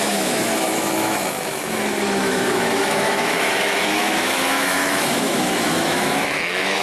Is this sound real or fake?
fake